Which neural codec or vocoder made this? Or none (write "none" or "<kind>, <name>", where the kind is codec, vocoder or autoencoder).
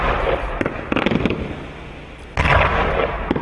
none